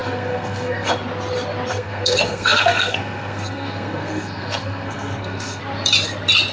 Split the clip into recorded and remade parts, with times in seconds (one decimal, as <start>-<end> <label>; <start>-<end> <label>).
0.0-0.9 remade; 0.9-1.7 recorded; 1.7-5.6 remade; 5.6-6.5 recorded